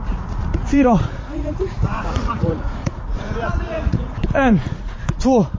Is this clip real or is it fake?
fake